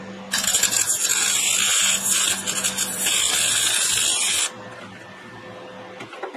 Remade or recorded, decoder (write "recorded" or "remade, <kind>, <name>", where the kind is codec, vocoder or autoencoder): recorded